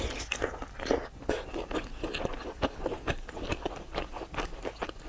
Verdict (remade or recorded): recorded